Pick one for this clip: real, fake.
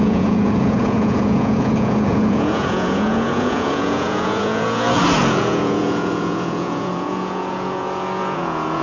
fake